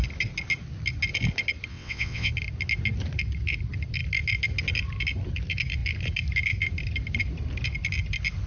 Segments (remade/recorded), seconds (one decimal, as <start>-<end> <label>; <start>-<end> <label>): 0.0-1.7 recorded; 1.7-2.3 remade; 2.3-8.5 recorded